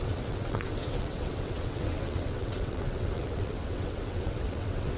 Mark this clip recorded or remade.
remade